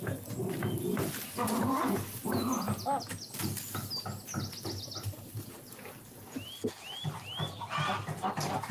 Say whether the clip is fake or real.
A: real